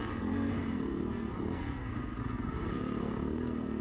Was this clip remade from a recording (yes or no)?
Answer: yes